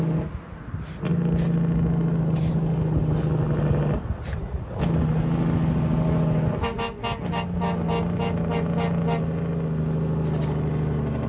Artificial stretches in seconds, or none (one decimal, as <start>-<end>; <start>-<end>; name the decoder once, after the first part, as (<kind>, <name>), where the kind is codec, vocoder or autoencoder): none